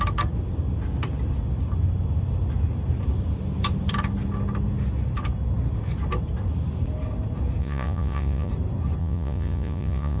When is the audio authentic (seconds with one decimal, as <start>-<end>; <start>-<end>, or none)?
0.0-7.6; 8.5-9.0